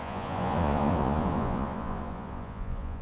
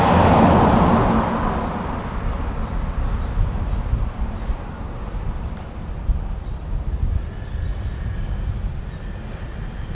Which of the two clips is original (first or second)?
second